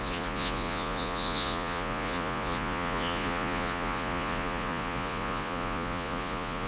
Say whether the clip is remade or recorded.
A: remade